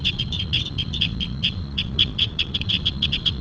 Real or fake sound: fake